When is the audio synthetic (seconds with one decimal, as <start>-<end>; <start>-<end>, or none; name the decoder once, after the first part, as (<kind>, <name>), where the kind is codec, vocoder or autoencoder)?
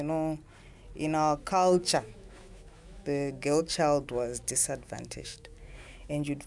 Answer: 1.8-3.6 (autoencoder, DAC-VAE); 4.6-6.1